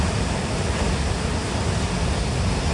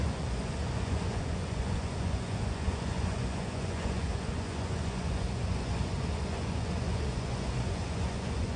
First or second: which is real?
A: first